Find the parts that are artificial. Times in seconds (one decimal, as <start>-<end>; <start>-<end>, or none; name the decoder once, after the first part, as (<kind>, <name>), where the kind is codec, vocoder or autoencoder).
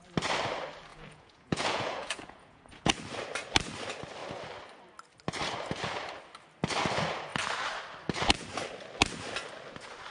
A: 0.9-2.9 (vocoder, Vocos)